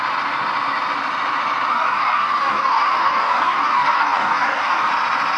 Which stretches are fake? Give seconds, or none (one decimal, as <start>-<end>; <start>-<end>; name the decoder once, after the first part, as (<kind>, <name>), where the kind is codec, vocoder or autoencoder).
1.7-4.9 (codec, DAC)